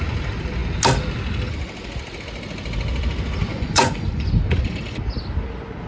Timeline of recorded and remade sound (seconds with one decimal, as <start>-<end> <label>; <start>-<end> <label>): 0.0-3.5 recorded; 3.5-4.3 remade; 4.3-5.9 recorded